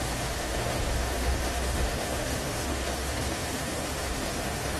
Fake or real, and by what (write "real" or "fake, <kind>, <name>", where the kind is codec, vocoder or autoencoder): fake, autoencoder, DAC-VAE